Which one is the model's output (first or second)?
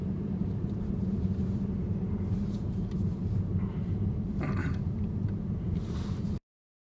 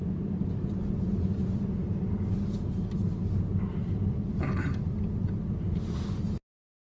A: first